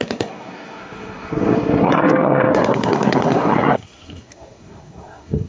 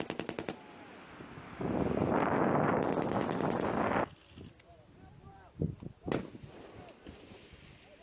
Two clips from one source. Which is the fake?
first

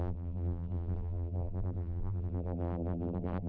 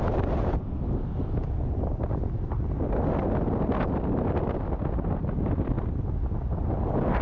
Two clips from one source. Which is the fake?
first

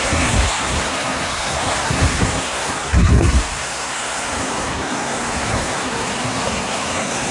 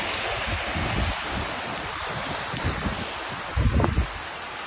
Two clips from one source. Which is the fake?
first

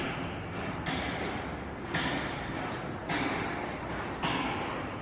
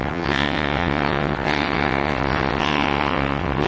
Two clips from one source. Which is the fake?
second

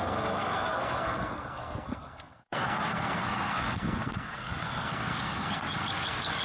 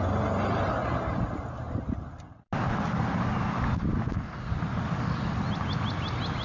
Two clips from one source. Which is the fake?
first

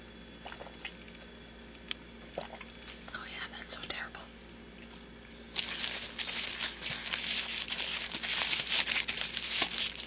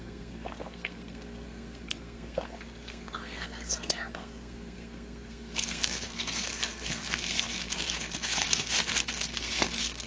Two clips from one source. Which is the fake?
second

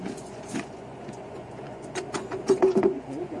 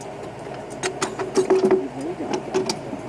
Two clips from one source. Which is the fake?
first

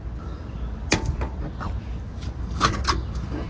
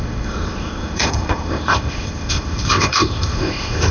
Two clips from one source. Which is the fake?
second